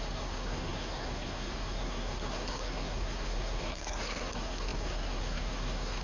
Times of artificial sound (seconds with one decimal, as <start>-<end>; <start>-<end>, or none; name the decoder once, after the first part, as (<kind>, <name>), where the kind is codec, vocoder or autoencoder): 0.0-6.0 (codec, SNAC)